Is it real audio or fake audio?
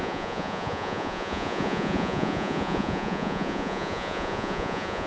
fake